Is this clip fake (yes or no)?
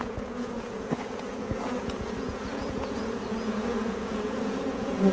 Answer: yes